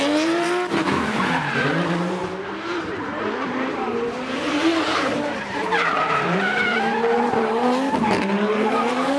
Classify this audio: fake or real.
fake